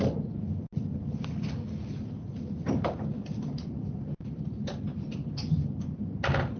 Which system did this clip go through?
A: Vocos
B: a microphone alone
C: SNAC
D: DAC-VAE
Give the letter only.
B